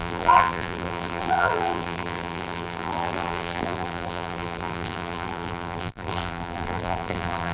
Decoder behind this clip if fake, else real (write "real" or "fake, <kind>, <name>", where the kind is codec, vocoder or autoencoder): fake, vocoder, BigVGAN v2